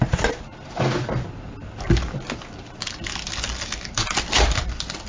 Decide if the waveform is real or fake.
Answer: real